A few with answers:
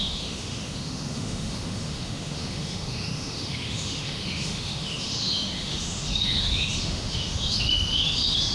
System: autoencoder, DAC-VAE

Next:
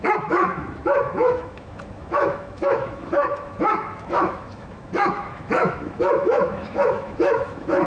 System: autoencoder, DAC-VAE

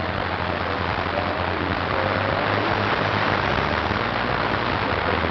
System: none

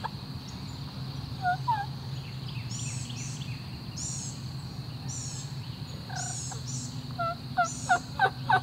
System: none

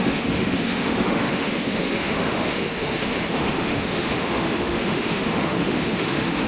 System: autoencoder, DAC-VAE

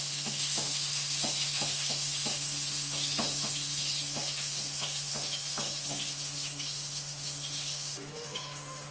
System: autoencoder, DAC-VAE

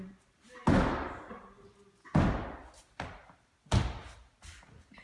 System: none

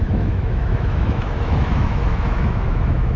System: autoencoder, DAC-VAE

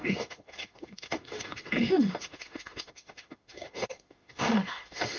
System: autoencoder, DAC-VAE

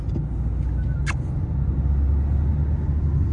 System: none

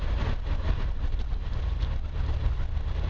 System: none